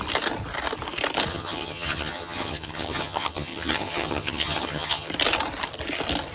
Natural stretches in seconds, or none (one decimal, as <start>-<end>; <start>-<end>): 0.0-1.3; 5.1-6.3